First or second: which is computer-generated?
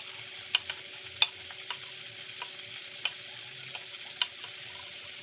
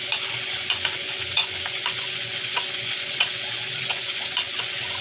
second